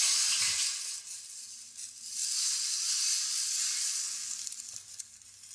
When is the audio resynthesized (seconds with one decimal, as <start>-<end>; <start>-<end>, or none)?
none